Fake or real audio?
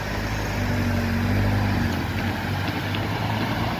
real